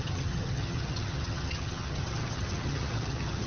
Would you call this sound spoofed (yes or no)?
yes